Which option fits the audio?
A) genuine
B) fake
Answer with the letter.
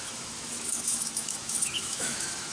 B